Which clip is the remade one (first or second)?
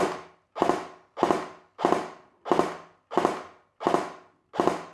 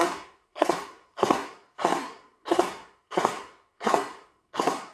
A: second